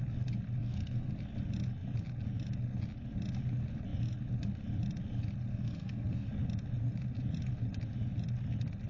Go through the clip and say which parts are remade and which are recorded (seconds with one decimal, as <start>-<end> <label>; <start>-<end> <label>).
0.0-0.6 recorded; 0.6-1.1 remade; 1.1-5.5 recorded; 5.5-6.3 remade; 6.3-8.9 recorded